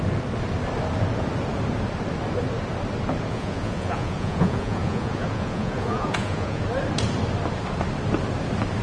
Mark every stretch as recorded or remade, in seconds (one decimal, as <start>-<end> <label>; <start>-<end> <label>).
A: 0.0-3.3 recorded; 3.3-6.6 remade; 6.6-8.8 recorded